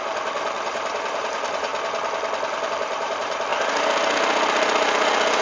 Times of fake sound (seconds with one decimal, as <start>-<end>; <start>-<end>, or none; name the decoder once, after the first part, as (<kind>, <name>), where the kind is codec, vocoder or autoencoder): 0.0-1.7 (vocoder, BigVGAN v2); 2.7-3.5